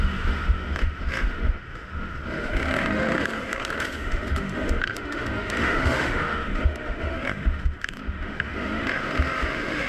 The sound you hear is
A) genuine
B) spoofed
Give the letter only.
B